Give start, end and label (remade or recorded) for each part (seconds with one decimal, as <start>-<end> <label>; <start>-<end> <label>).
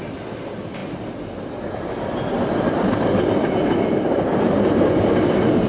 0.0-5.7 recorded